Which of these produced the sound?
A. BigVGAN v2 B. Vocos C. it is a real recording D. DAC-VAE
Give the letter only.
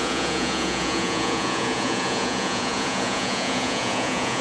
B